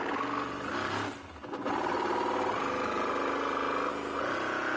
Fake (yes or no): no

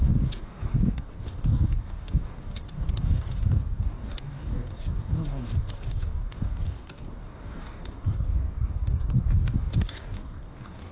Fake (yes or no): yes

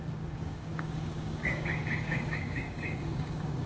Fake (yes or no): yes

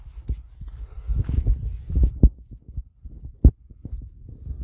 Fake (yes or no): no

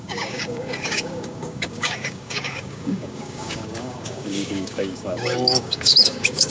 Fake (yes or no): yes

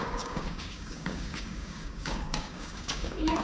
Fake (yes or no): yes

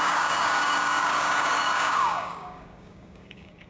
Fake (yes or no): yes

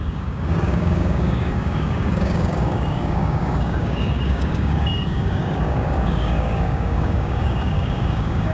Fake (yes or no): yes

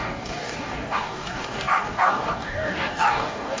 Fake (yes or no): yes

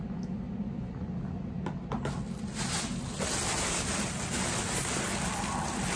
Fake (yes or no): no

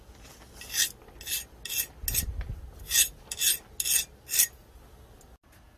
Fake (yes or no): no